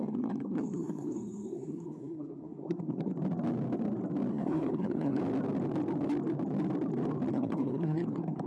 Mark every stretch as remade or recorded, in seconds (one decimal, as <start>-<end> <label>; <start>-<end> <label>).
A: 0.0-3.1 remade; 3.1-4.3 recorded; 4.3-5.2 remade; 5.2-7.3 recorded; 7.3-8.5 remade

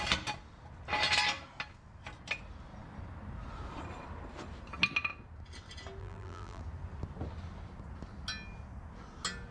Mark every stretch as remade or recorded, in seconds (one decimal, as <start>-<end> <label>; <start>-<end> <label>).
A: 0.0-6.0 recorded; 6.0-6.6 remade; 6.6-9.5 recorded

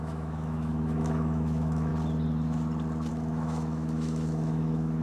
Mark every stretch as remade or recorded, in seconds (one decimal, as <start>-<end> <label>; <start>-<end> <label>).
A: 0.0-1.9 remade; 1.9-3.1 recorded; 3.1-5.0 remade

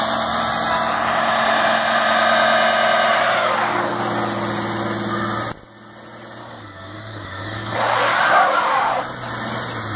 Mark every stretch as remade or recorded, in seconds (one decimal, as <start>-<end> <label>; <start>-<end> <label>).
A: 0.0-3.1 recorded; 3.1-4.0 remade; 4.0-6.4 recorded; 6.4-9.0 remade; 9.0-10.0 recorded

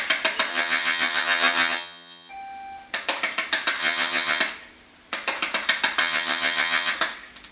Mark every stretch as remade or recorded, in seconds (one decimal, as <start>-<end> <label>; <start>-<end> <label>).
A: 0.0-0.5 recorded; 0.5-2.3 remade; 2.3-3.8 recorded; 3.8-4.4 remade; 4.4-6.0 recorded; 6.0-6.9 remade; 6.9-7.5 recorded

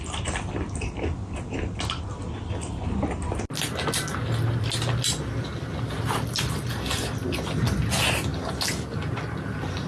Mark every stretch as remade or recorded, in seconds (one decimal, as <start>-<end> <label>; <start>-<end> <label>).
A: 0.0-9.9 recorded

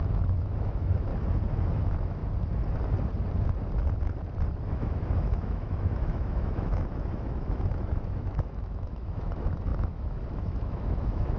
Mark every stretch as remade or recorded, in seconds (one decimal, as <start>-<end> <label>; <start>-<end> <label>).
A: 0.0-1.1 remade; 1.1-1.7 recorded; 1.7-2.2 remade; 2.2-4.6 recorded; 4.6-11.4 remade

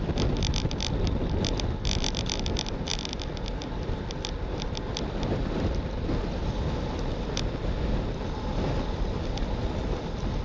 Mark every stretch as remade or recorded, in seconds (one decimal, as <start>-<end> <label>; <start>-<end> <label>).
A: 0.0-10.4 recorded